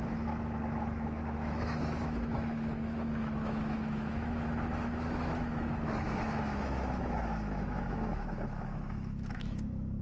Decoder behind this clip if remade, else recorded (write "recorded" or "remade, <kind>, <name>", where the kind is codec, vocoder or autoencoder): remade, autoencoder, DAC-VAE